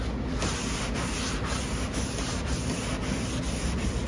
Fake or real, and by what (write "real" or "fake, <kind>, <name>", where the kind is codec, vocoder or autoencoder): real